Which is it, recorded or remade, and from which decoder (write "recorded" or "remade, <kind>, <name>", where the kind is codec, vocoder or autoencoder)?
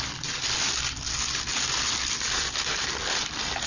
recorded